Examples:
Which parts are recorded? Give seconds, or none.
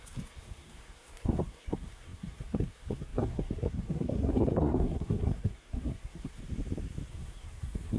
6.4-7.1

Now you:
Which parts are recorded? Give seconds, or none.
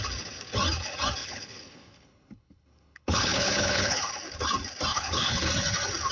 0.0-1.2; 4.1-4.9; 5.5-6.1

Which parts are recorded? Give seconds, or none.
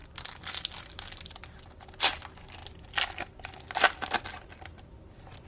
0.0-5.5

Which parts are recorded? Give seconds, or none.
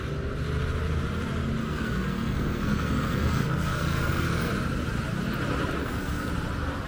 0.0-1.6; 4.5-5.8; 6.3-6.9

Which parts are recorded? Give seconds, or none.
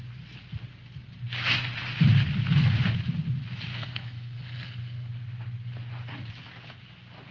0.0-3.7; 5.1-7.3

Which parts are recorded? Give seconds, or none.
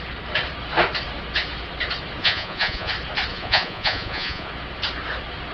0.0-2.2; 2.9-3.3; 4.5-5.5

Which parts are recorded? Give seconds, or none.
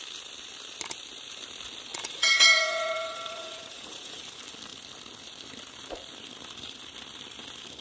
0.0-1.9; 4.2-7.8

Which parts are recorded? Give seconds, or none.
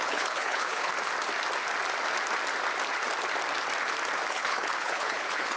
0.9-4.3